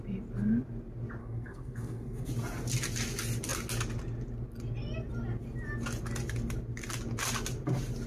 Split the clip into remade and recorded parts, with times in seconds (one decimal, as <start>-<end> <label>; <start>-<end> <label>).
0.0-1.2 recorded; 1.2-2.3 remade; 2.3-8.1 recorded